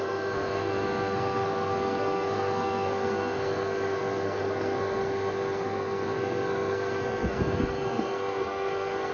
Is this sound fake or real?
fake